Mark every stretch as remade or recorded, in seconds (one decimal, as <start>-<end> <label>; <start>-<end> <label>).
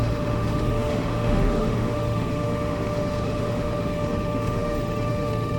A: 0.0-5.6 remade